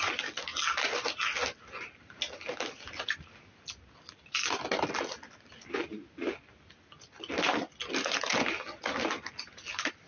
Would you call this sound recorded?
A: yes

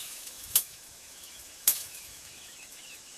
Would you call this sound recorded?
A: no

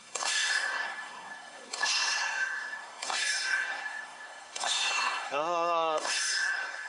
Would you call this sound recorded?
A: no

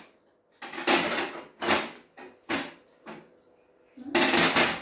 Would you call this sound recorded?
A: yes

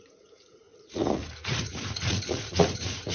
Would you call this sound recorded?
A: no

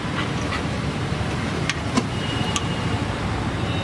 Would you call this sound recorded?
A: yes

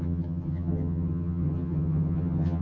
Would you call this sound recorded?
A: no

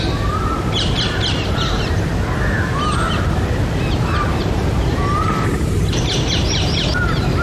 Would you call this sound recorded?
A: yes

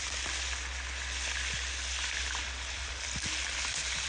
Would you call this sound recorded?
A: yes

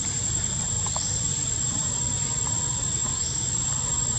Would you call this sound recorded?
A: no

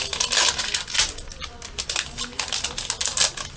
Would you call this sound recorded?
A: yes